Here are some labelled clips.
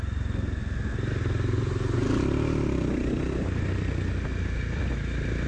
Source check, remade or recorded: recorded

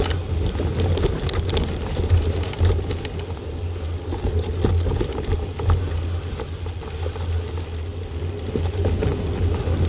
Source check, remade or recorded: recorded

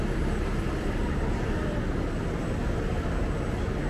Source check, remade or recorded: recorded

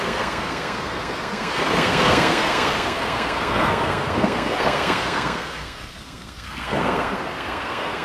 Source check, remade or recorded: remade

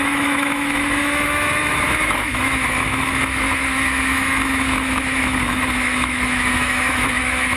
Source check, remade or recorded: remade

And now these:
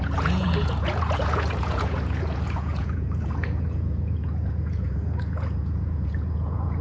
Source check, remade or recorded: remade